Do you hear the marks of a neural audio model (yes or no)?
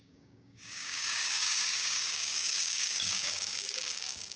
yes